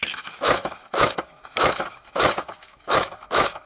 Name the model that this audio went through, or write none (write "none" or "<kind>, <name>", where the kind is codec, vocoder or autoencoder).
autoencoder, DAC-VAE